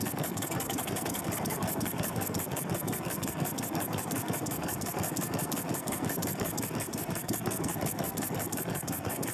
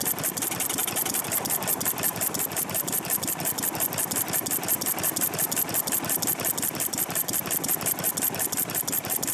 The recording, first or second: second